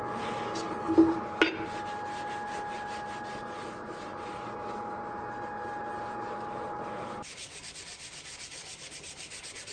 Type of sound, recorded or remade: recorded